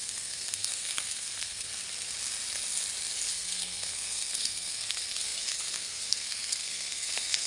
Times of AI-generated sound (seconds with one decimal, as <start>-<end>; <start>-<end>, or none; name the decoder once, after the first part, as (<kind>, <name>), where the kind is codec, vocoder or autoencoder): 0.0-1.7 (codec, SNAC); 3.3-7.5